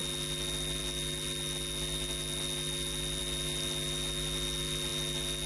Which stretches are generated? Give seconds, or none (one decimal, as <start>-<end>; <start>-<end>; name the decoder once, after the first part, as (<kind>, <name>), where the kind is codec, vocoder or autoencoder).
none